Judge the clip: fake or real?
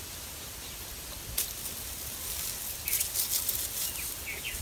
real